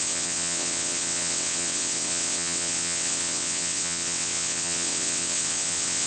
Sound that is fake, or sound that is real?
fake